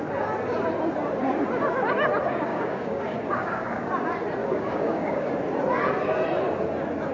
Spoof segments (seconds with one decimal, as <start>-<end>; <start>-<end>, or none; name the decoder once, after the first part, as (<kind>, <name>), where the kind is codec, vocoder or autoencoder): 2.5-3.9 (codec, DAC); 4.4-5.3